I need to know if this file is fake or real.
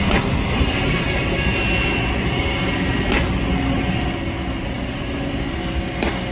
real